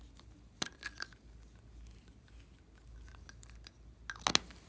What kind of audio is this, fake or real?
real